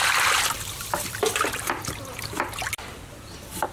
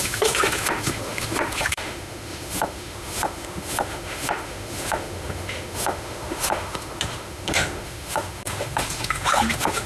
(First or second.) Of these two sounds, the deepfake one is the second